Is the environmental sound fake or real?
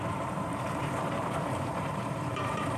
fake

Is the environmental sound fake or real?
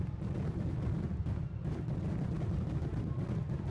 real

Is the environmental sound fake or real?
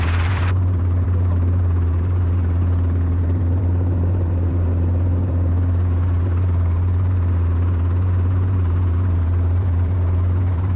fake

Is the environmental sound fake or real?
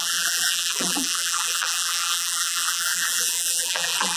fake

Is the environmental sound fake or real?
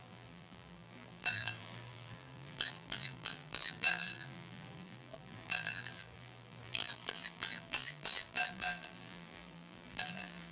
fake